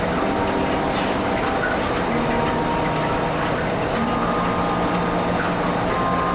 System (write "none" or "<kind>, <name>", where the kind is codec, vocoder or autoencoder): none